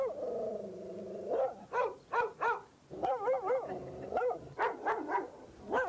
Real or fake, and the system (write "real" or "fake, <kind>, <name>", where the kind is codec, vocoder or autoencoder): fake, vocoder, BigVGAN v2